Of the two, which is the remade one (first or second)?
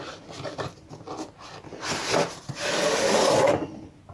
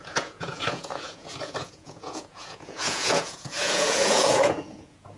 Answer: second